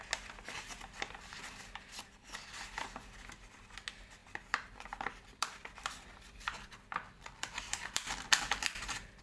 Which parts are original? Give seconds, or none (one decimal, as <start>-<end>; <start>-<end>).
0.0-4.2